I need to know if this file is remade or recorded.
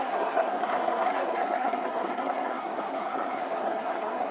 remade